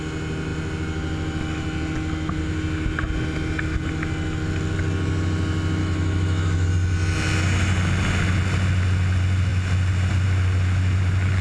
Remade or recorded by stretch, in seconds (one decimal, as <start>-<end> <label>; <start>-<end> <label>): 0.0-5.8 recorded; 5.8-6.7 remade; 6.7-11.4 recorded